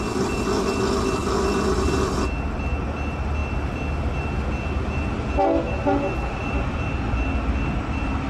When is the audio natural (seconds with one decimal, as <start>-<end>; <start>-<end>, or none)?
0.0-8.3